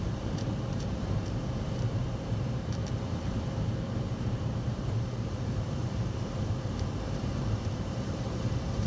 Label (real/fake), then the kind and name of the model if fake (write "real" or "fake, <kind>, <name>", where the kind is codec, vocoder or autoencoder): fake, vocoder, BigVGAN v2